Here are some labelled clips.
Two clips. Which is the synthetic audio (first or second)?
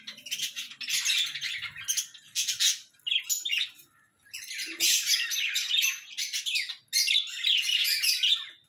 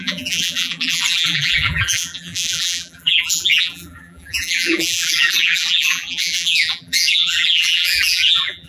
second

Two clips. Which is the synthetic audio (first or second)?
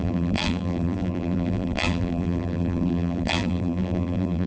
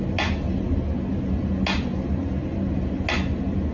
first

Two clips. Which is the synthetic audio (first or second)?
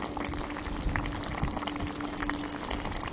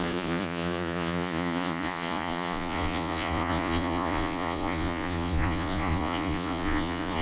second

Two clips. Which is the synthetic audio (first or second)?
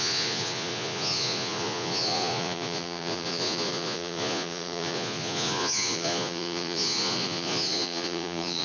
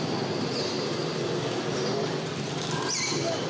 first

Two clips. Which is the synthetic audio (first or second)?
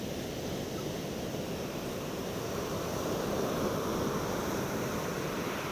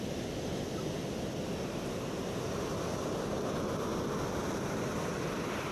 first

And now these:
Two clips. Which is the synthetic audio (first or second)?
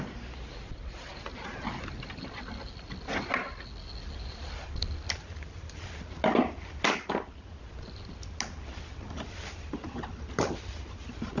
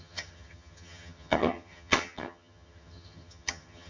second